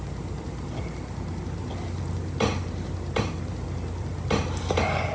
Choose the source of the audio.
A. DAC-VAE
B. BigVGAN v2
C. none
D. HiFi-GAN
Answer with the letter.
C